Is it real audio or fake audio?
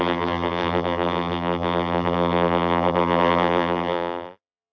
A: fake